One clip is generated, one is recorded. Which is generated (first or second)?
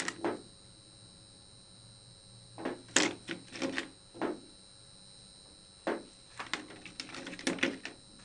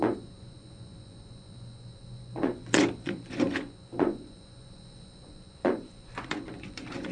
second